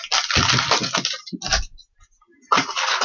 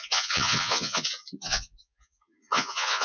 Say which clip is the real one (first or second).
first